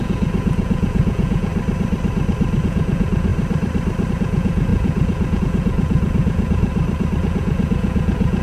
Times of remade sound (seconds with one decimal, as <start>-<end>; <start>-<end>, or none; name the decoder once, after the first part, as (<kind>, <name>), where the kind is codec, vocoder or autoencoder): 0.0-1.5 (vocoder, Vocos); 2.6-3.3; 4.1-6.7; 7.2-8.4